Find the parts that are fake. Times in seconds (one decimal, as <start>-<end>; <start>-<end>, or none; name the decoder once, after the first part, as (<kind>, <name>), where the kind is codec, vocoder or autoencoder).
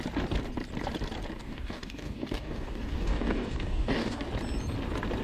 1.4-4.3 (codec, DAC)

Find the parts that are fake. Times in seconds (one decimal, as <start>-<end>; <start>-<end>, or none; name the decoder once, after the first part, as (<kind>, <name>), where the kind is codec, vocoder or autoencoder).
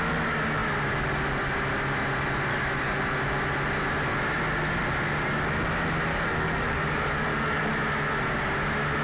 2.5-3.0 (codec, DAC); 6.1-7.6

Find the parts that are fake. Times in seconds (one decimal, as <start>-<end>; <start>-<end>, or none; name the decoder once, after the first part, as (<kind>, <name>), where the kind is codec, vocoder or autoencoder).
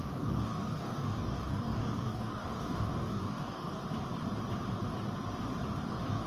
0.0-3.8 (codec, DAC); 5.8-6.3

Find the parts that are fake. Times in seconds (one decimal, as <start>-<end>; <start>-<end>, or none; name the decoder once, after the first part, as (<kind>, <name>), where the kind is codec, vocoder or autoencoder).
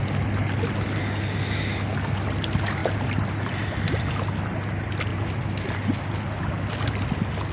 none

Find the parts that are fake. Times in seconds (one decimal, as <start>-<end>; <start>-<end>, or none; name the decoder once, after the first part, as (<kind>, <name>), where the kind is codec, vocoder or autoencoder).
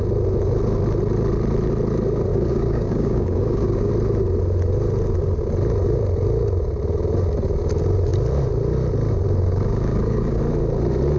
2.3-3.9 (codec, DAC); 9.5-10.4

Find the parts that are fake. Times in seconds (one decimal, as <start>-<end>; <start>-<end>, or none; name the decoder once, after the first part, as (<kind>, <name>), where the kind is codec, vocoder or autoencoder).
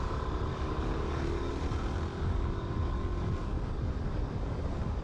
0.5-1.5 (codec, DAC); 2.1-5.0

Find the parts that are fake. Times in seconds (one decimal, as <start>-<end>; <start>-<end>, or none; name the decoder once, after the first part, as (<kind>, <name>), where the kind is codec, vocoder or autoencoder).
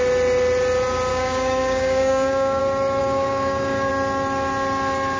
1.1-2.6 (codec, DAC); 3.0-3.9